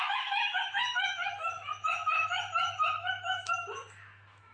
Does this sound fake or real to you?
fake